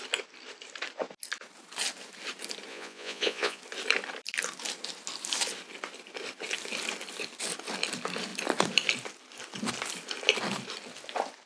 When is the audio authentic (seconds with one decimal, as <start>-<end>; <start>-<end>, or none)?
0.0-2.7; 3.6-11.5